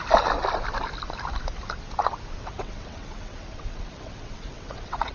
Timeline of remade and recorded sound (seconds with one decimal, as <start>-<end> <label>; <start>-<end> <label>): 0.0-2.4 recorded; 2.4-5.1 remade